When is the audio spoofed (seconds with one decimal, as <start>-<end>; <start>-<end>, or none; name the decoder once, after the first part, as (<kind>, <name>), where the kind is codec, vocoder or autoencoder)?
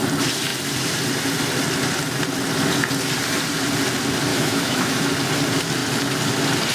4.3-5.1 (autoencoder, DAC-VAE)